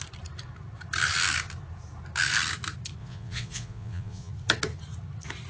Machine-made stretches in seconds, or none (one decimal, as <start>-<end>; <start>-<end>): 3.0-4.3